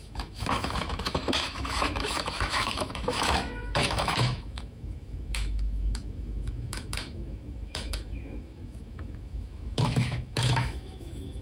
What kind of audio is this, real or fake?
fake